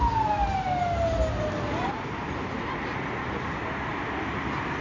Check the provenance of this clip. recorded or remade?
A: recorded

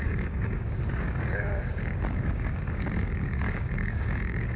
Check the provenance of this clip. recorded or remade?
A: remade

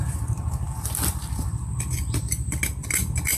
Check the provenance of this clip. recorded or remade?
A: recorded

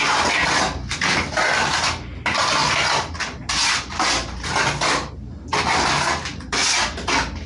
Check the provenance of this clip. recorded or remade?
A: recorded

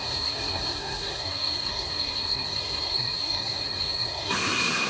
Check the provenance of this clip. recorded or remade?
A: remade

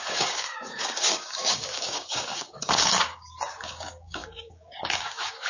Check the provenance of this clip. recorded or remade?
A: remade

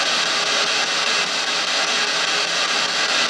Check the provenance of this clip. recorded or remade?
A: recorded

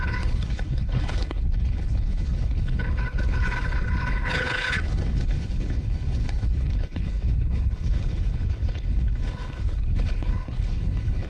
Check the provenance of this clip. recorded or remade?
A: remade